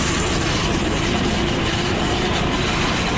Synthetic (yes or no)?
no